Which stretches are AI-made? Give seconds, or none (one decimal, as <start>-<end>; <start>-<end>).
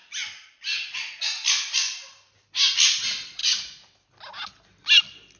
none